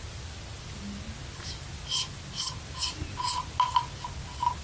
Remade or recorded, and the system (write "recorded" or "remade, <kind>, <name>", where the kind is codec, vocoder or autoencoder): recorded